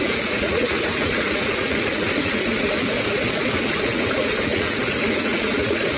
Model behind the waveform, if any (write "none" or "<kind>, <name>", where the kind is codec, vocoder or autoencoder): vocoder, Vocos